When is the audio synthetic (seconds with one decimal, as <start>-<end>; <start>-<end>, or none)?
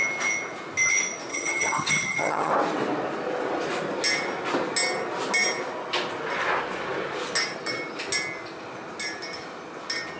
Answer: 1.3-2.5